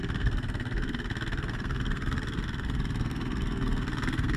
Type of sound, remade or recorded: remade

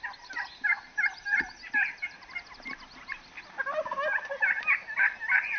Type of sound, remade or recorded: recorded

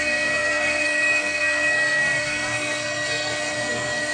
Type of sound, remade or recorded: remade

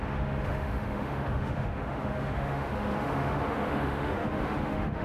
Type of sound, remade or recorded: remade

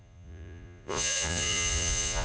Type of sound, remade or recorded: remade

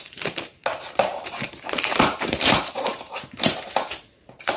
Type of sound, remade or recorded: remade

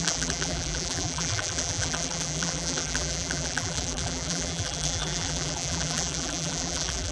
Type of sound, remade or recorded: remade